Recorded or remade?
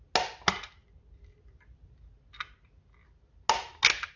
recorded